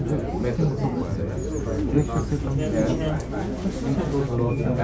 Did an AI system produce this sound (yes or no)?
no